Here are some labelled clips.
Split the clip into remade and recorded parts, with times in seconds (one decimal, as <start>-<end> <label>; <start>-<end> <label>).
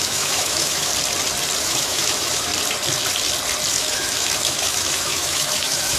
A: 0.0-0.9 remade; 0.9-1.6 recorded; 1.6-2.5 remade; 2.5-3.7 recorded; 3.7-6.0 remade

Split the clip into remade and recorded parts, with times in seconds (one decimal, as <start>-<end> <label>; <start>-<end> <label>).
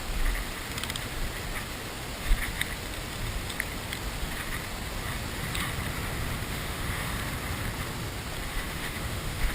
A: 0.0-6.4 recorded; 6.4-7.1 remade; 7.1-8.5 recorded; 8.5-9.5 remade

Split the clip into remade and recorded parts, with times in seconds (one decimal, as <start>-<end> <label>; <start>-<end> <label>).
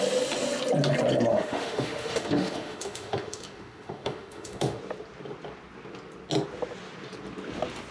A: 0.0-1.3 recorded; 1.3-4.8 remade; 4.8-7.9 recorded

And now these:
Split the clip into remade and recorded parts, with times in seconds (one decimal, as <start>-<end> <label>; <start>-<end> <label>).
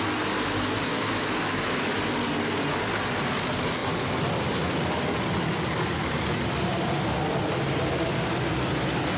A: 0.0-0.9 recorded; 0.9-2.0 remade; 2.0-9.2 recorded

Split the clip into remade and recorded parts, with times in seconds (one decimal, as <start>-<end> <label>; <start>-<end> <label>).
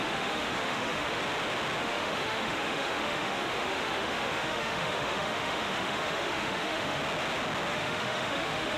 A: 0.0-1.2 remade; 1.2-1.8 recorded; 1.8-7.0 remade; 7.0-7.7 recorded; 7.7-8.8 remade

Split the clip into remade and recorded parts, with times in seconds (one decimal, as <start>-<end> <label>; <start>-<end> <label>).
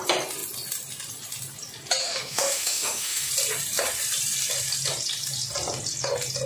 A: 0.0-2.0 recorded; 2.0-3.3 remade; 3.3-6.5 recorded